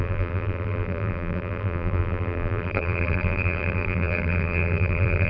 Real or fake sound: fake